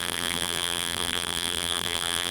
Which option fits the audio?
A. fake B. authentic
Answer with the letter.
A